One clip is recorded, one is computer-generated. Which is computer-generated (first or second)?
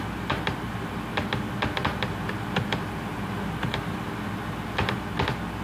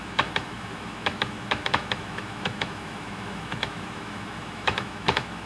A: second